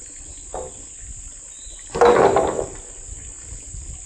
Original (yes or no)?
yes